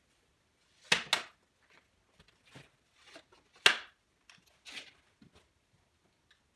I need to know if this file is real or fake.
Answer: real